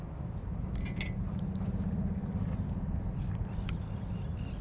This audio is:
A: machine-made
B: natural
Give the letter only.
B